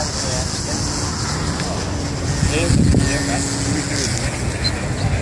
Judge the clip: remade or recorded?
recorded